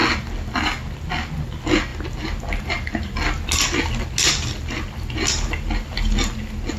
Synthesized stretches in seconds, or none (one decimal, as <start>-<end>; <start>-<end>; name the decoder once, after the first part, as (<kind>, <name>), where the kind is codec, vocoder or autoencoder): none